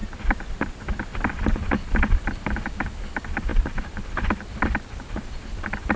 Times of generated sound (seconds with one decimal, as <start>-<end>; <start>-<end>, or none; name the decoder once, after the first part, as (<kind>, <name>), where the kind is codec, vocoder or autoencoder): none